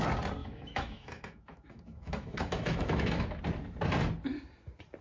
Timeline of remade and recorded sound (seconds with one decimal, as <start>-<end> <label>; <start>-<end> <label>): 0.0-0.4 recorded; 0.4-3.4 remade; 3.4-5.0 recorded